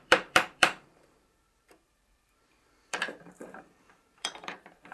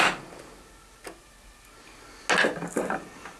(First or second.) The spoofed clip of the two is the first